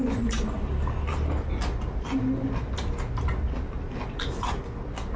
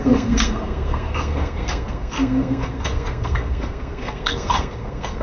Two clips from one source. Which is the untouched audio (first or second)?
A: first